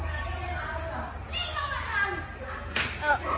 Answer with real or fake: real